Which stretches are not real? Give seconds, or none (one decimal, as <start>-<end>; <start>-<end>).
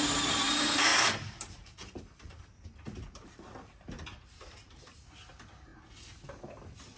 0.9-5.1